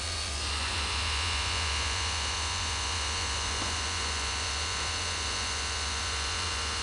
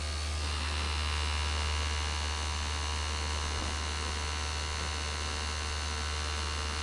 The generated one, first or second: first